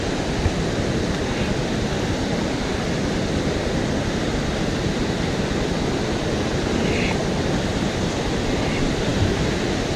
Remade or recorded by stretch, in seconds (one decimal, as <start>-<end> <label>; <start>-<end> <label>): 0.0-10.0 recorded